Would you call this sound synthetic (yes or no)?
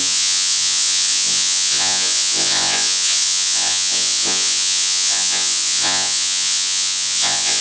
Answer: yes